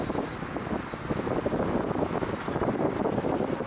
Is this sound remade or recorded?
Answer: recorded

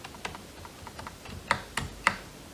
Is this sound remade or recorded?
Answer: recorded